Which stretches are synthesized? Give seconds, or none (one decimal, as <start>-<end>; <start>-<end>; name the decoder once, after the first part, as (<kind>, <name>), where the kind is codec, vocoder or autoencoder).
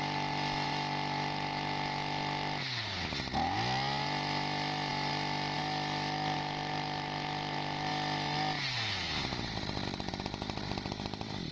none